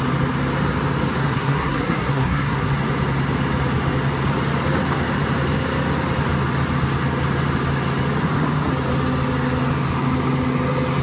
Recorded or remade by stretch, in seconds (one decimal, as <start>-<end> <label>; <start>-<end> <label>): 0.0-1.2 recorded; 1.2-2.7 remade; 2.7-11.0 recorded